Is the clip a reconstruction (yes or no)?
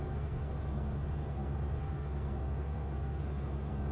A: yes